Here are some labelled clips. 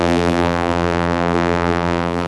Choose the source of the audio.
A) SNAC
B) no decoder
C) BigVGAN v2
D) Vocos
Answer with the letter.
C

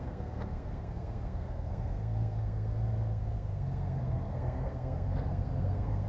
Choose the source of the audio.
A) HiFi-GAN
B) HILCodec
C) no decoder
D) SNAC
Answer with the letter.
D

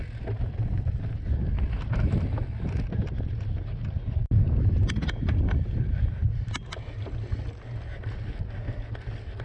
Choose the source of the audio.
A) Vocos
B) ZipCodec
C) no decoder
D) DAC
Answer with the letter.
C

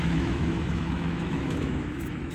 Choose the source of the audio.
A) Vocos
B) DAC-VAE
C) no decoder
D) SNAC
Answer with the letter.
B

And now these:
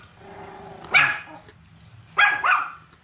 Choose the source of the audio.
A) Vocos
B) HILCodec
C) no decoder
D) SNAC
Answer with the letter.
C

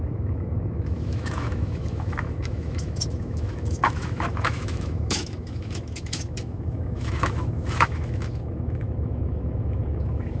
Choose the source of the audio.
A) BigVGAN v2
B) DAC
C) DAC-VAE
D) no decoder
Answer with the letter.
C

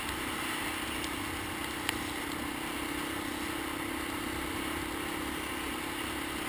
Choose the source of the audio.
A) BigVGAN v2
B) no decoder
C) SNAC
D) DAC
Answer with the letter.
B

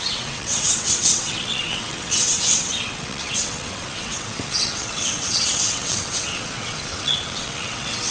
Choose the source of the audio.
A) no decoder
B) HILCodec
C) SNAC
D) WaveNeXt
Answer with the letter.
D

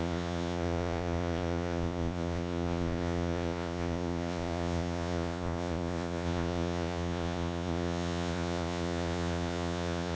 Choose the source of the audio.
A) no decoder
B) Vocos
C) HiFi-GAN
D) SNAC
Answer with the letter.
B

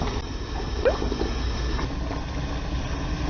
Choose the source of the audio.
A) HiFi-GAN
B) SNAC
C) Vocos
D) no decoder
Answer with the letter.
D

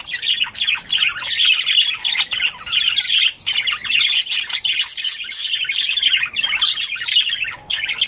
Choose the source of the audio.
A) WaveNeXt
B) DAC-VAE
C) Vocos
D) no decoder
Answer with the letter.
D